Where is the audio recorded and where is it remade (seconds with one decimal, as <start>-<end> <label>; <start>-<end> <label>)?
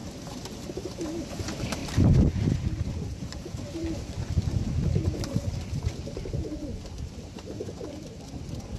0.0-0.7 recorded; 0.7-8.8 remade